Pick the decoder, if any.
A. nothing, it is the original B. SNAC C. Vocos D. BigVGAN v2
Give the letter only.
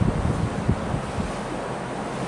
A